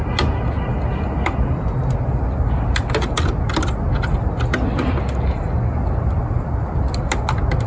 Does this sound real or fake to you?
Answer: real